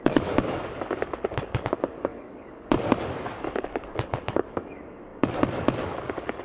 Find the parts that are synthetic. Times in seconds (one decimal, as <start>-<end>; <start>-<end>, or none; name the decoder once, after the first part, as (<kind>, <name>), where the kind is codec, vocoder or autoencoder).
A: 0.0-6.4 (codec, DAC)